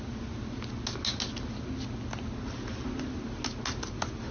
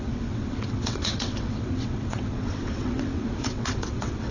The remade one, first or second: second